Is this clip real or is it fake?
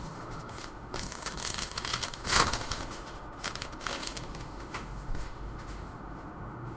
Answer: fake